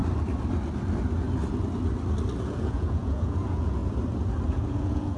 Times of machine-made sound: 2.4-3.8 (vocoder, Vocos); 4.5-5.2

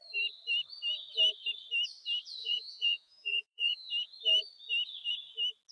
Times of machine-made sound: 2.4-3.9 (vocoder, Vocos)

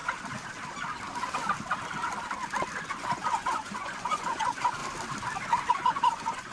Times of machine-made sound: 2.9-4.8 (vocoder, Vocos); 5.7-6.5

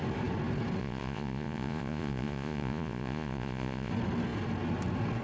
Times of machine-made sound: 0.8-3.9 (vocoder, Vocos)

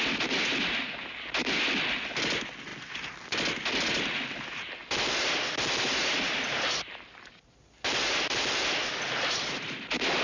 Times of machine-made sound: none

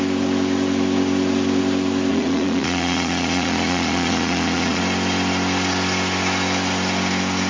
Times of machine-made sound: 2.1-4.8 (vocoder, Vocos)

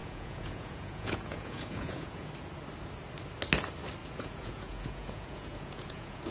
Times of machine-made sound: 0.0-2.3 (vocoder, Vocos); 4.0-6.3